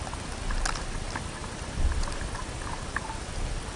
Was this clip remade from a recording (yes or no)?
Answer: no